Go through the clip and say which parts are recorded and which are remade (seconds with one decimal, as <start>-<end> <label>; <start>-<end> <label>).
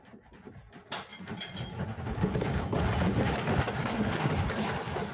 0.0-3.6 recorded; 3.6-4.3 remade; 4.3-5.1 recorded